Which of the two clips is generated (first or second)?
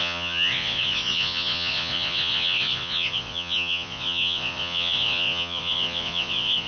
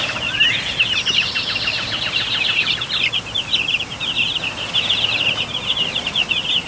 first